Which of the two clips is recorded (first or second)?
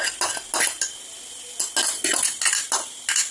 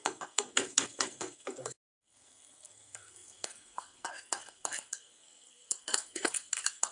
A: first